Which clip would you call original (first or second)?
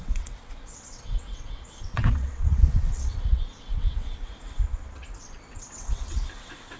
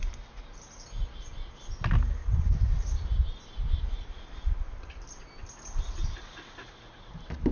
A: second